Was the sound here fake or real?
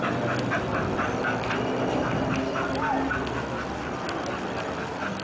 real